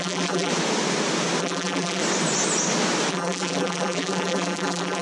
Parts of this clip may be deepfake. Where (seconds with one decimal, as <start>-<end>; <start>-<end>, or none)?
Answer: 0.0-0.5; 1.4-2.0; 3.1-5.0